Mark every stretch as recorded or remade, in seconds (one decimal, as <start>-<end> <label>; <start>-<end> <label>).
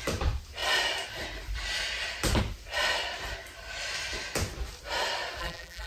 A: 0.0-5.4 recorded; 5.4-5.9 remade